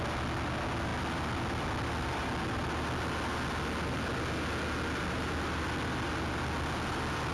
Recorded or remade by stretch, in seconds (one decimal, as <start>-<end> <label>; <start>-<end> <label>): 0.0-7.3 recorded